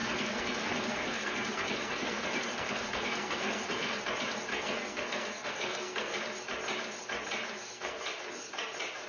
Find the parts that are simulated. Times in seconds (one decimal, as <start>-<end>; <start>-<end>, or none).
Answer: 0.0-4.0; 4.5-6.2; 7.6-8.2